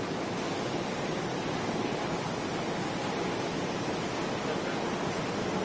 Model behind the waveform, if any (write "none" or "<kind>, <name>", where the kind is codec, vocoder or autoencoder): none